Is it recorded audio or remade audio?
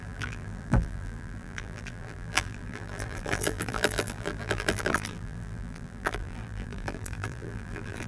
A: remade